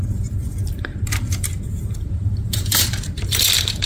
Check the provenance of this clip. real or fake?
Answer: fake